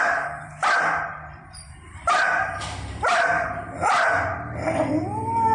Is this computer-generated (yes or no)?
yes